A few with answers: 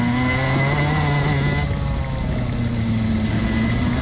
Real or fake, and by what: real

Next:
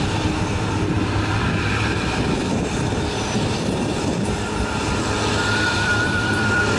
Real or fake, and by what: fake, vocoder, BigVGAN v2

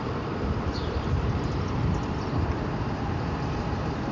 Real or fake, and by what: fake, vocoder, BigVGAN v2